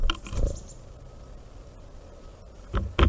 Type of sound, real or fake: real